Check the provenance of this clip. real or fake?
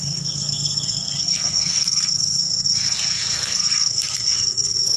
fake